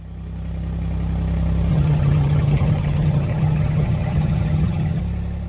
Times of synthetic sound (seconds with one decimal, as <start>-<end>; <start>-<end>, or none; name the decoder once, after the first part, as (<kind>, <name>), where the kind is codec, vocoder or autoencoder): 1.7-5.0 (vocoder, HiFi-GAN)